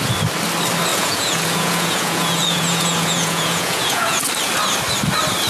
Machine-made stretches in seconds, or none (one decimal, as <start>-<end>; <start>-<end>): 0.9-4.2